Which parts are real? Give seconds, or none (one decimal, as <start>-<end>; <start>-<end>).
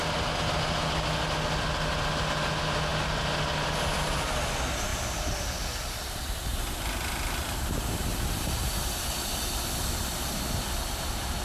0.0-4.9; 9.0-11.4